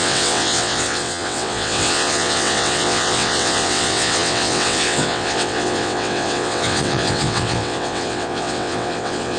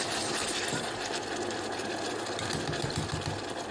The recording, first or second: second